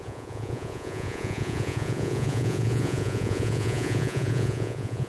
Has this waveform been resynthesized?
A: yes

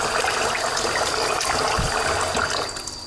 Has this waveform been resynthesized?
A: no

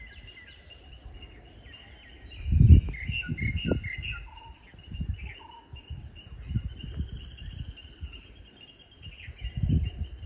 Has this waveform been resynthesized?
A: no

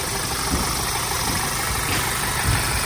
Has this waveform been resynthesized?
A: no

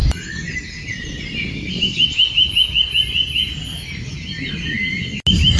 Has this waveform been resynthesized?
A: no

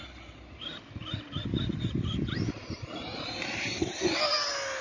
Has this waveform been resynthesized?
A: no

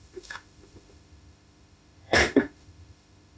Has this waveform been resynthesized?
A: yes